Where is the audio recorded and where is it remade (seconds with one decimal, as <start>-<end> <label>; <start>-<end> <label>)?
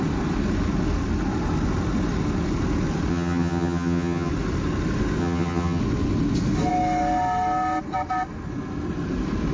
0.0-3.1 recorded; 3.1-4.3 remade; 4.3-5.2 recorded; 5.2-5.8 remade; 5.8-9.5 recorded